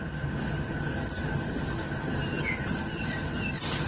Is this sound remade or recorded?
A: recorded